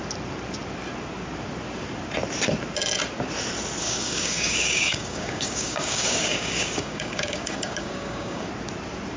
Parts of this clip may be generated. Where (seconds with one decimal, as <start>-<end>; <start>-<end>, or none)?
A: 3.8-8.5